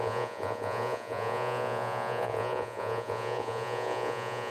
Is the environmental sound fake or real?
fake